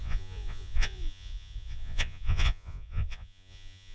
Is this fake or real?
fake